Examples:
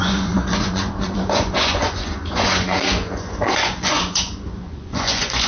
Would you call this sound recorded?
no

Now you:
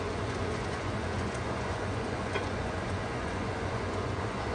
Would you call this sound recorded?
no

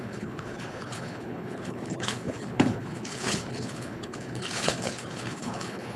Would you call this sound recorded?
no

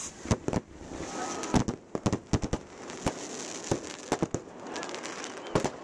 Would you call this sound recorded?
yes